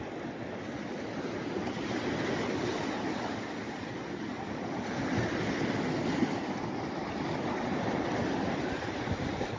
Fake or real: real